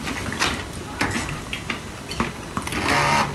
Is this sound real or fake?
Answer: real